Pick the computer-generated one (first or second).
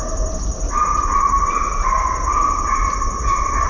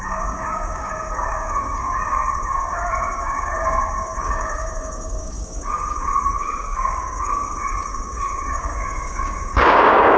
second